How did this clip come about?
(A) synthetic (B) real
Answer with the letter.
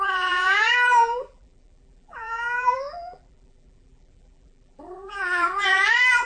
A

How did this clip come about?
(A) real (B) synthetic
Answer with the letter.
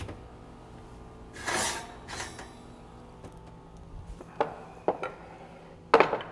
A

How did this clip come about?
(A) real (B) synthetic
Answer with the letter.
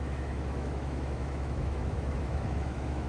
B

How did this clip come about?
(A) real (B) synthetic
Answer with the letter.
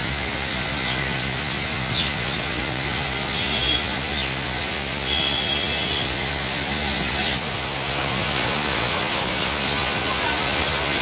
B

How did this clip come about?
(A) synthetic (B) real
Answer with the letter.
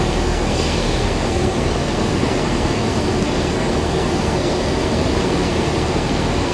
A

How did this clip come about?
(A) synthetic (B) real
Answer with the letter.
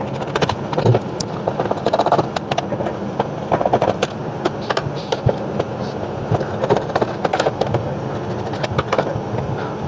B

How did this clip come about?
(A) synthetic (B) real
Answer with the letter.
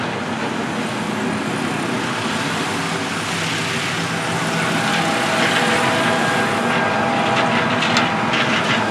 B